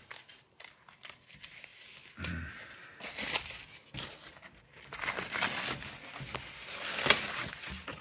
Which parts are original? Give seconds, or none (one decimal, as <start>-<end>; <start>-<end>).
0.0-8.0